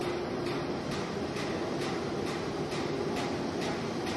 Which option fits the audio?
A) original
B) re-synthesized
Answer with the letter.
A